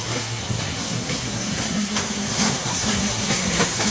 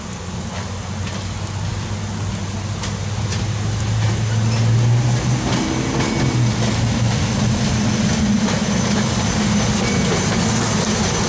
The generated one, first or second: first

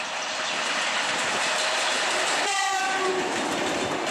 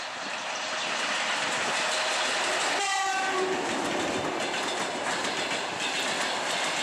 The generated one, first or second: first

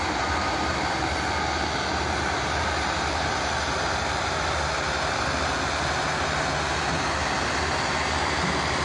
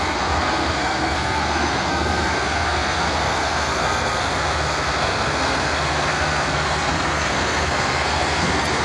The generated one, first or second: second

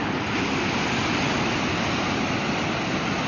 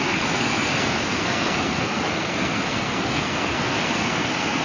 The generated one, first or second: second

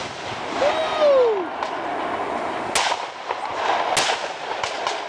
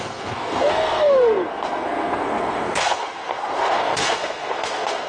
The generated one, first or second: second